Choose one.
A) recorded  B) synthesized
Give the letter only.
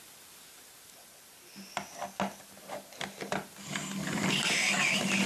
A